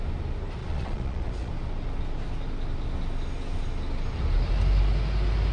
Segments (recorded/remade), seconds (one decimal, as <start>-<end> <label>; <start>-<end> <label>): 0.0-0.6 recorded; 0.6-1.5 remade; 1.5-5.5 recorded

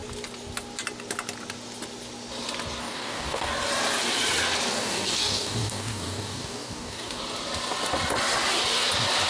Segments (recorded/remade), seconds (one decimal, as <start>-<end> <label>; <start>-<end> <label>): 0.0-2.8 recorded; 2.8-3.5 remade; 3.5-4.8 recorded; 4.8-7.2 remade; 7.2-9.3 recorded

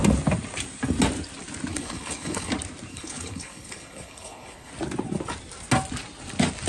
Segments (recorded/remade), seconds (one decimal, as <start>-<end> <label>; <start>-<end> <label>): 0.0-1.7 recorded; 1.7-2.5 remade; 2.5-2.9 recorded; 2.9-4.7 remade; 4.7-6.7 recorded